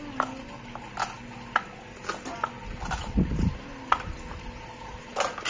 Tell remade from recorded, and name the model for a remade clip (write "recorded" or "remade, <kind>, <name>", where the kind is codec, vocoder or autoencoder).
recorded